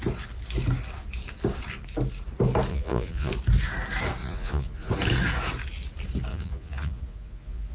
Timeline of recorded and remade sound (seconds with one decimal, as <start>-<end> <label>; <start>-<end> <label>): 0.0-2.7 recorded; 2.7-3.3 remade; 3.3-4.2 recorded; 4.2-4.9 remade; 4.9-6.3 recorded; 6.3-7.7 remade